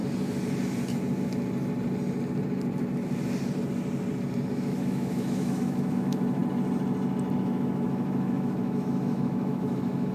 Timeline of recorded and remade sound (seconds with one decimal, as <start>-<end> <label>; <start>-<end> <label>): 0.0-4.5 recorded; 4.5-6.4 remade; 6.4-7.4 recorded; 7.4-10.1 remade